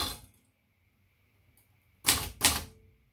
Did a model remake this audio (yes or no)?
no